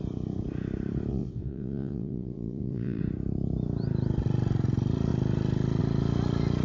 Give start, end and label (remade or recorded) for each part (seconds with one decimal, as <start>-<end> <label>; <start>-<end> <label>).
0.0-1.1 recorded; 1.1-3.0 remade; 3.0-6.6 recorded